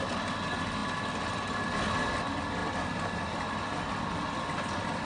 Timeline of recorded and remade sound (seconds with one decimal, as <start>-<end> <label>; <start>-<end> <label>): 0.0-5.1 recorded